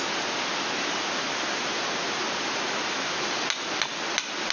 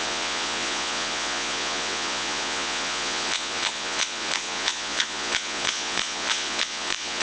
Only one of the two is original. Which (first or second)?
first